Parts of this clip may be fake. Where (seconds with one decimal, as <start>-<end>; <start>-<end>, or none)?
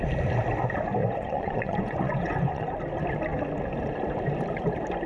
1.0-2.7